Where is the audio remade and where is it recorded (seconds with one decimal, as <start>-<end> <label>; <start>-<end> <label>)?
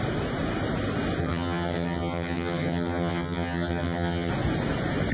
0.0-1.2 recorded; 1.2-4.3 remade; 4.3-5.1 recorded